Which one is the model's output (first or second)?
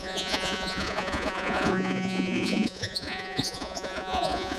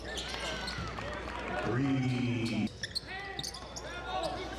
first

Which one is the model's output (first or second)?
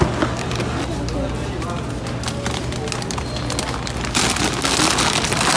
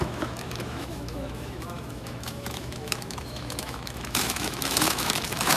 second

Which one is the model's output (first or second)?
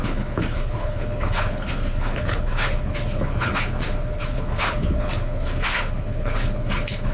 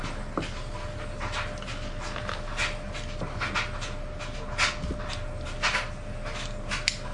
first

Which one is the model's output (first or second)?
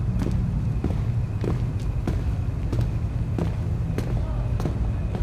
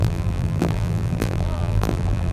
second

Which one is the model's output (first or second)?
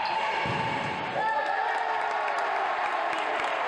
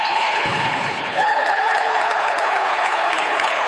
second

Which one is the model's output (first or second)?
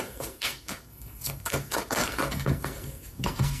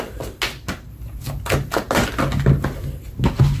first